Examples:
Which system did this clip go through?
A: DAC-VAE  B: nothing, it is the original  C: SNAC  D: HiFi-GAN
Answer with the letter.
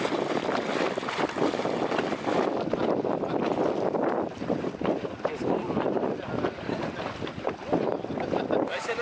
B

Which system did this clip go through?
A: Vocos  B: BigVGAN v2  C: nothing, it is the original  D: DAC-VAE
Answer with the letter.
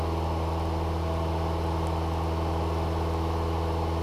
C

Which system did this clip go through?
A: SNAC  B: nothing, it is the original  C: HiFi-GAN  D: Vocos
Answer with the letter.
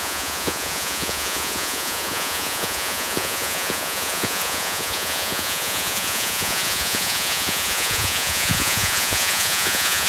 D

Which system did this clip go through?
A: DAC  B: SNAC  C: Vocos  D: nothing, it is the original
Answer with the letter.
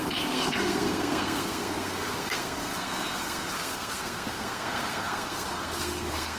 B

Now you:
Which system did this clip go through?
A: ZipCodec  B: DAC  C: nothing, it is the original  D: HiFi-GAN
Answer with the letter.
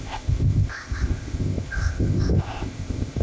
A